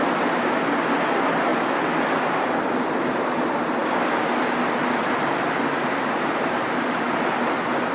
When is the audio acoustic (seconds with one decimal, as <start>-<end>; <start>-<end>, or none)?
0.0-7.9